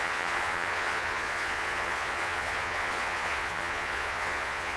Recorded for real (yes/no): no